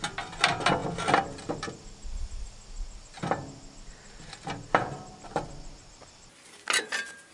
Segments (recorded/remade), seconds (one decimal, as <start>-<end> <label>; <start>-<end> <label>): 0.0-7.3 recorded